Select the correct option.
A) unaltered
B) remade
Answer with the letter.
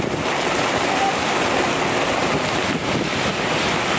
A